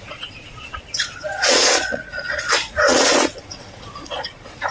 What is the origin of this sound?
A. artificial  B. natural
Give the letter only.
A